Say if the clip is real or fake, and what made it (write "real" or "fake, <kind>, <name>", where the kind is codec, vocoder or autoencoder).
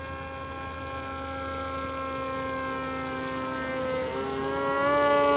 real